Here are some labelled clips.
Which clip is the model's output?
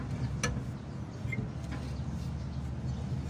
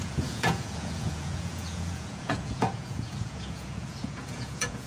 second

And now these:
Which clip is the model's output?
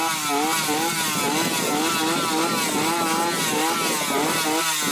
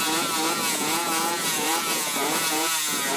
second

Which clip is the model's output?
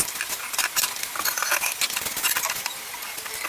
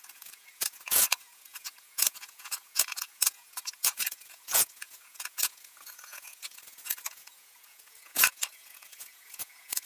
second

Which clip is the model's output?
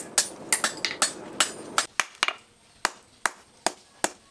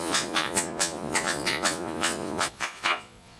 second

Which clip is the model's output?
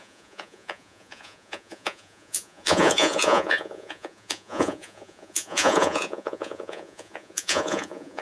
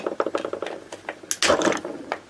first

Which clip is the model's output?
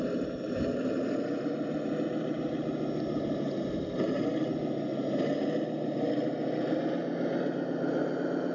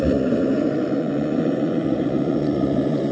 second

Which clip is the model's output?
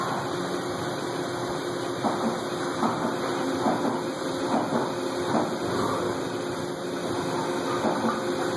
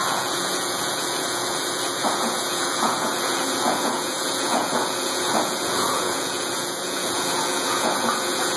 second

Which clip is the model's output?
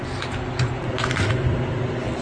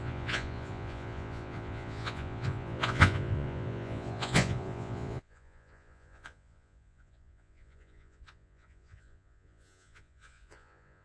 second